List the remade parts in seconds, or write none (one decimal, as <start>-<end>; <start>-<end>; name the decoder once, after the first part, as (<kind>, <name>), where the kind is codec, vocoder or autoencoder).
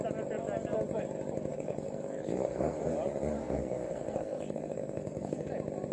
1.5-2.9 (codec, SNAC); 3.4-5.5